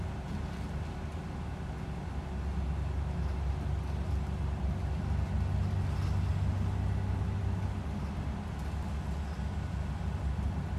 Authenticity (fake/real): real